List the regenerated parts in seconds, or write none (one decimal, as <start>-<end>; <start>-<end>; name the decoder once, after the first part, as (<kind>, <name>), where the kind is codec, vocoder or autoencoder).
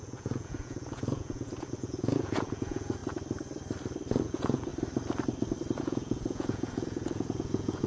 0.0-3.0 (vocoder, Vocos); 4.2-4.7; 5.8-7.9